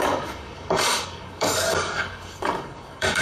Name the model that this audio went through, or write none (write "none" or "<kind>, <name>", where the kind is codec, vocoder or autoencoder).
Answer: codec, DAC